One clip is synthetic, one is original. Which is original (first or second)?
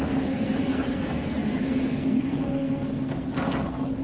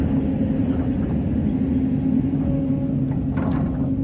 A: second